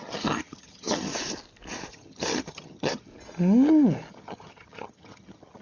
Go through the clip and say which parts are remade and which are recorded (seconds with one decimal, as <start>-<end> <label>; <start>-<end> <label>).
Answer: 0.0-1.1 remade; 1.1-1.9 recorded; 1.9-3.1 remade; 3.1-4.1 recorded; 4.1-5.6 remade